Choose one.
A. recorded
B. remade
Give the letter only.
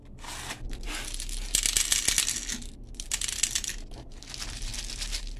A